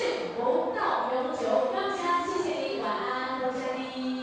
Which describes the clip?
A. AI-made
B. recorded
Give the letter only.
B